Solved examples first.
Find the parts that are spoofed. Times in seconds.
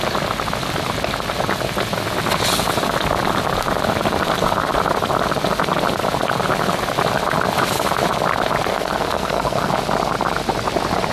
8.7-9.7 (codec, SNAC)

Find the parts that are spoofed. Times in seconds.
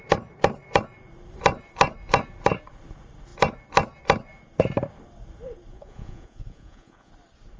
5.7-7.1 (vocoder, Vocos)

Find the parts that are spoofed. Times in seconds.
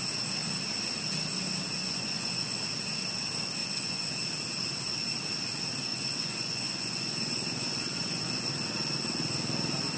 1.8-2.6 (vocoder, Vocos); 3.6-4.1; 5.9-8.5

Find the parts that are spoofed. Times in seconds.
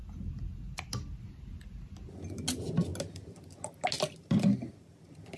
none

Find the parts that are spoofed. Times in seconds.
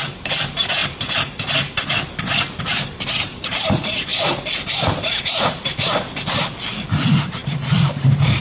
0.0-0.8 (vocoder, BigVGAN v2); 2.6-4.1; 6.8-8.4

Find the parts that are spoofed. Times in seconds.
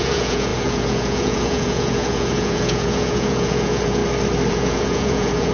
0.0-4.0 (vocoder, Vocos); 4.5-5.5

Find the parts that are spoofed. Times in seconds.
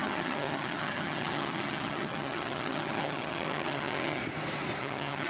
0.0-4.2 (vocoder, HiFi-GAN); 4.8-5.3